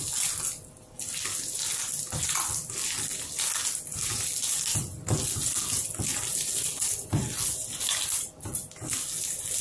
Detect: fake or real real